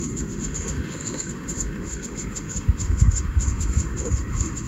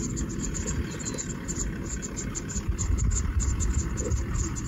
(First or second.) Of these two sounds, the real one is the second